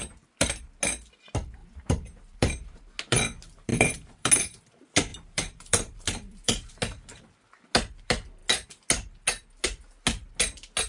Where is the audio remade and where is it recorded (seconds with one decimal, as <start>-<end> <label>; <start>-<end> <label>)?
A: 0.0-1.6 recorded; 1.6-2.8 remade; 2.8-3.7 recorded; 3.7-4.3 remade; 4.3-5.1 recorded; 5.1-6.7 remade; 6.7-10.9 recorded